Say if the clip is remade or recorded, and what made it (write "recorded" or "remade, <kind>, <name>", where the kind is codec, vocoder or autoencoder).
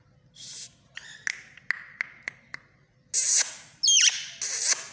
recorded